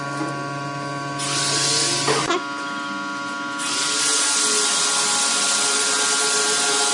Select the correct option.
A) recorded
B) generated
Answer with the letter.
A